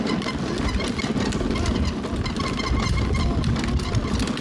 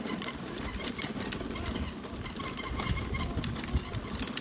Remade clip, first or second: second